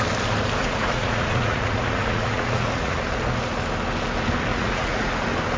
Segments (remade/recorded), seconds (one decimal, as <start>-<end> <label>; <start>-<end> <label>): 0.0-0.6 recorded; 0.6-3.0 remade; 3.0-4.5 recorded; 4.5-5.1 remade; 5.1-5.6 recorded